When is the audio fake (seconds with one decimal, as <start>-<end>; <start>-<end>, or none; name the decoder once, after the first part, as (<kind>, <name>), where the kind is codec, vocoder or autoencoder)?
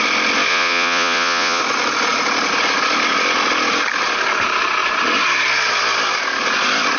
0.5-1.6 (vocoder, Vocos)